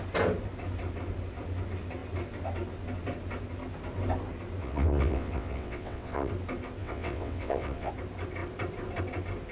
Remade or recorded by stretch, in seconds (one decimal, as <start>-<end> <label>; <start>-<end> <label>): 0.0-4.6 recorded; 4.6-6.3 remade; 6.3-6.8 recorded; 6.8-7.9 remade; 7.9-9.5 recorded